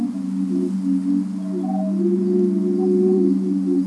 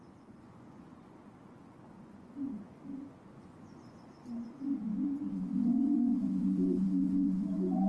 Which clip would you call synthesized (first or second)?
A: second